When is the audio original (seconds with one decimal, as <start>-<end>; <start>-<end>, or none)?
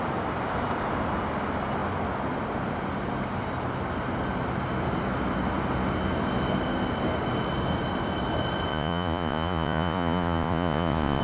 0.0-8.7